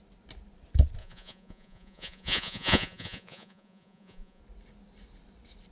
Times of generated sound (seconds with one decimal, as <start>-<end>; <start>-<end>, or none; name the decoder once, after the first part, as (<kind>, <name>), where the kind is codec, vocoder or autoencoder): 1.0-4.4 (vocoder, Vocos)